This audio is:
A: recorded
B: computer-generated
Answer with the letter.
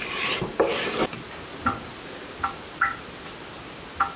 A